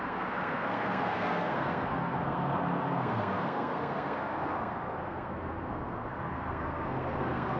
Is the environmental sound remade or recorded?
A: remade